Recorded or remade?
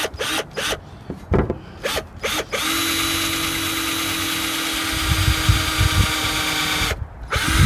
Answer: recorded